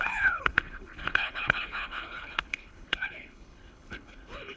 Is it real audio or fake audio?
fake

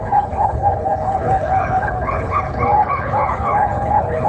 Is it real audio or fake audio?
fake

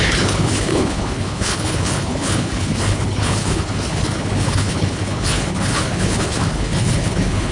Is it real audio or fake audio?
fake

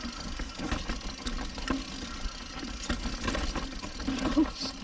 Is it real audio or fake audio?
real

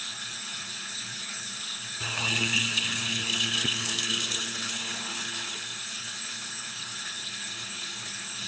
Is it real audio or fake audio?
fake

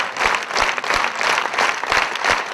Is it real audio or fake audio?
real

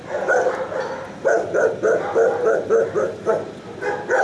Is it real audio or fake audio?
real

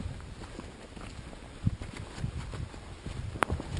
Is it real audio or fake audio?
real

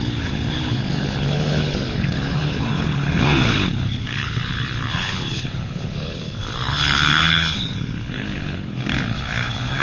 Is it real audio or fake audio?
fake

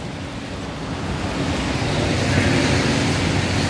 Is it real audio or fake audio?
real